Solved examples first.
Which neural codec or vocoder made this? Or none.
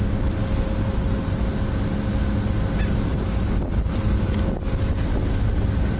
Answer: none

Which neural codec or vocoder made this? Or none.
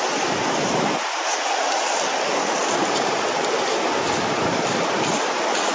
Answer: none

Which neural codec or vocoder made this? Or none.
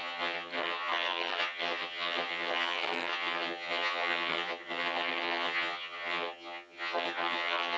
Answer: vocoder, HiFi-GAN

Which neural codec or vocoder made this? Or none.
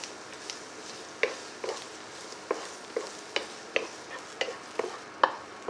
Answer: none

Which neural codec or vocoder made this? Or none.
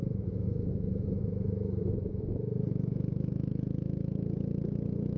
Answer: autoencoder, DAC-VAE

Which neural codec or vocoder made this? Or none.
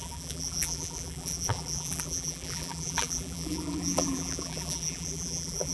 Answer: vocoder, BigVGAN v2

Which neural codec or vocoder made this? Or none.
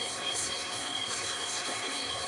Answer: codec, SNAC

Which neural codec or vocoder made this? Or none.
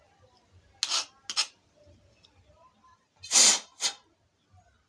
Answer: none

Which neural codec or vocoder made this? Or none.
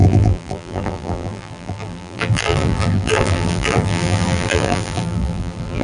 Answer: vocoder, BigVGAN v2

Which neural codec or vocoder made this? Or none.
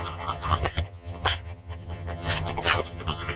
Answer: vocoder, HiFi-GAN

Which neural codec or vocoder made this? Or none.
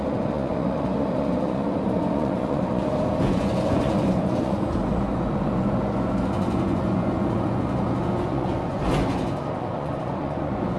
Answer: vocoder, Vocos